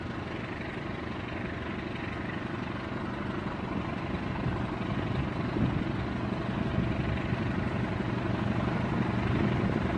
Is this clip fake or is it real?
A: real